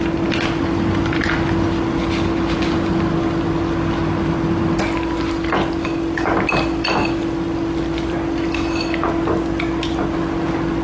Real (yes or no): yes